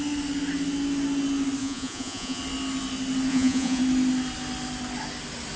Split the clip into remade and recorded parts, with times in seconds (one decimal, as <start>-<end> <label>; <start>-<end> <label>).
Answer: 0.0-1.6 recorded; 1.6-2.4 remade; 2.4-3.3 recorded; 3.3-3.8 remade; 3.8-5.6 recorded